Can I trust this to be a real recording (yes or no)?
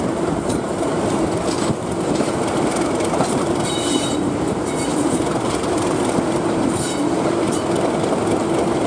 no